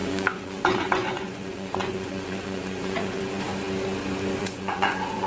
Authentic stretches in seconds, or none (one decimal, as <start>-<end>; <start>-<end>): 3.2-4.4